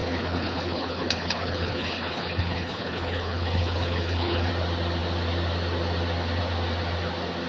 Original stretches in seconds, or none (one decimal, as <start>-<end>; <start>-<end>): 4.5-7.5